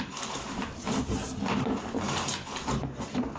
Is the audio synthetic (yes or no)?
no